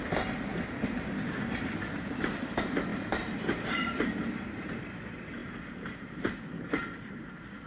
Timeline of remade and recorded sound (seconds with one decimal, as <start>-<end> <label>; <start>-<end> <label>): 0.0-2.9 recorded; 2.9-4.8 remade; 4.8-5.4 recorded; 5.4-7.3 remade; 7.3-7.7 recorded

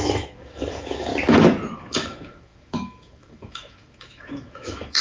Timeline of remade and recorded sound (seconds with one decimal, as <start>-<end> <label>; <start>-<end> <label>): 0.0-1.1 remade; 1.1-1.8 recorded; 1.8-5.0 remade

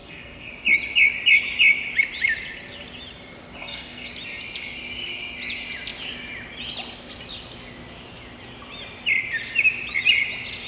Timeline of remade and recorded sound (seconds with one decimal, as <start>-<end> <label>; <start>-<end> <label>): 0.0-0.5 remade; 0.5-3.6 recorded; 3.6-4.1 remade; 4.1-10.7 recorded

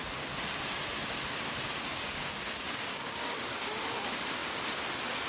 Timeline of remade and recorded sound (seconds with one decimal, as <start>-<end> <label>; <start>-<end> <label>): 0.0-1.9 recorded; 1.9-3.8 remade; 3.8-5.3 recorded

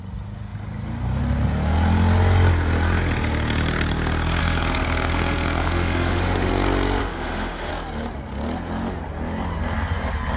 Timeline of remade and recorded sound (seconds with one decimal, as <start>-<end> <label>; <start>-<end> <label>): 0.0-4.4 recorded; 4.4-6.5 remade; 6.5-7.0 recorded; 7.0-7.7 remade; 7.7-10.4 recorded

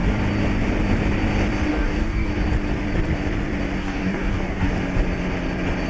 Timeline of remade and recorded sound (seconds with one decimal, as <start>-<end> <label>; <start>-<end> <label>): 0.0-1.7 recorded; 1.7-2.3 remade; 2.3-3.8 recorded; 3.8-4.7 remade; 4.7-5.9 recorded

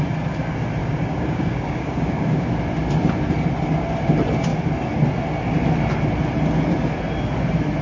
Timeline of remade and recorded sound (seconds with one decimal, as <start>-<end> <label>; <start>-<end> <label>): 0.0-0.8 recorded; 0.8-2.5 remade; 2.5-7.8 recorded